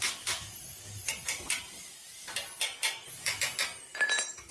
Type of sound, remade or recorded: recorded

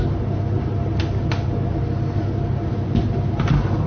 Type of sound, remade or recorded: recorded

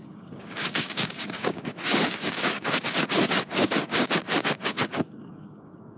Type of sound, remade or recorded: remade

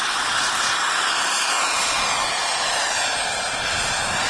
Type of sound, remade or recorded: recorded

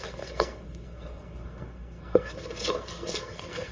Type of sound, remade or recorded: remade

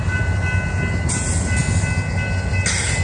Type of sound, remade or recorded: recorded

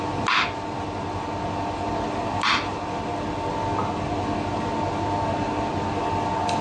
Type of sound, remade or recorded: recorded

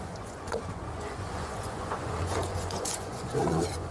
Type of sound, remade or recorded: remade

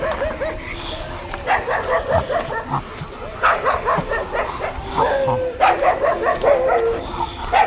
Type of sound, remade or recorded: recorded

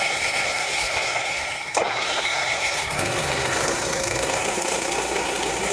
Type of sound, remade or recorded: remade